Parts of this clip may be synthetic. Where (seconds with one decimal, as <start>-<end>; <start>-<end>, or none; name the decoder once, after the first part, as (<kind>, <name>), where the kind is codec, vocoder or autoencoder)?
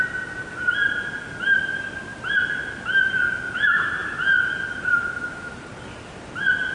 0.8-2.5 (vocoder, BigVGAN v2)